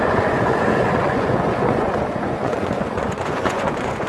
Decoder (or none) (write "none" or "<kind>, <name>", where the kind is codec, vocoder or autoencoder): vocoder, Vocos